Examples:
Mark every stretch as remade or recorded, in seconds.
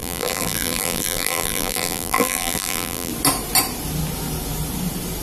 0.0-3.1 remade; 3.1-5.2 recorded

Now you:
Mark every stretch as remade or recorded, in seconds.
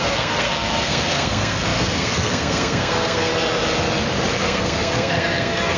0.0-3.3 remade; 3.3-4.4 recorded; 4.4-5.8 remade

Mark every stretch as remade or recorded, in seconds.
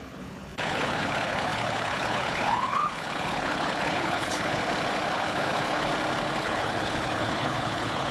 0.0-4.6 remade; 4.6-5.1 recorded; 5.1-5.9 remade; 5.9-6.4 recorded; 6.4-8.1 remade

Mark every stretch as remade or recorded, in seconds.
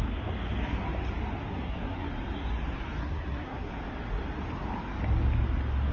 0.0-1.5 recorded; 1.5-2.1 remade; 2.1-3.0 recorded; 3.0-3.7 remade; 3.7-5.9 recorded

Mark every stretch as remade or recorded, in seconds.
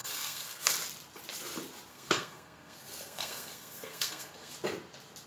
0.0-0.7 remade; 0.7-1.9 recorded; 1.9-4.5 remade; 4.5-5.3 recorded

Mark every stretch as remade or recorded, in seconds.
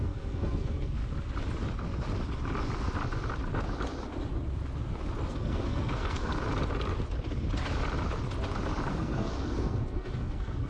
0.0-1.0 remade; 1.0-5.3 recorded; 5.3-6.3 remade; 6.3-8.9 recorded; 8.9-10.7 remade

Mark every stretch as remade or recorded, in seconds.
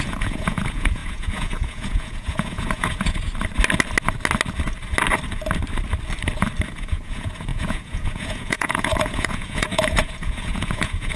0.0-3.3 remade; 3.3-6.7 recorded; 6.7-11.2 remade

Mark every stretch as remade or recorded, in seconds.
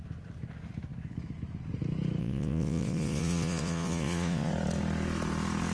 0.0-2.2 recorded; 2.2-4.5 remade; 4.5-5.7 recorded